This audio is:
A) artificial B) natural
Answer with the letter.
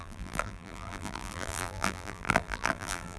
A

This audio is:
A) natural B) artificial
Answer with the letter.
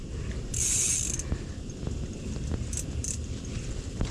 A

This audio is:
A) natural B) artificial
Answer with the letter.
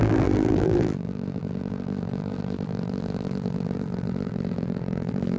B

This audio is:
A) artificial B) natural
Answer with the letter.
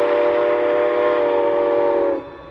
B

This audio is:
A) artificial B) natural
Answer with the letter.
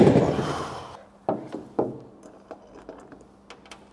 B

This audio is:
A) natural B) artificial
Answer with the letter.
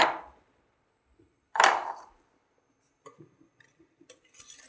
B